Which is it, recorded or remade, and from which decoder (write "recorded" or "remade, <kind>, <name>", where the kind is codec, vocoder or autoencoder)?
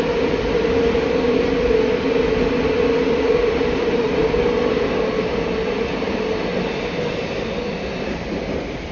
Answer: recorded